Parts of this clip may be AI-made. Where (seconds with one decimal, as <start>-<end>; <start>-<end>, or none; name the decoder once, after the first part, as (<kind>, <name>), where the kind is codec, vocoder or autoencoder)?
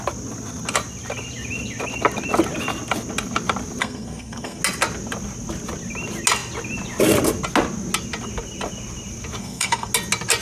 3.8-4.6 (codec, SNAC); 9.4-9.9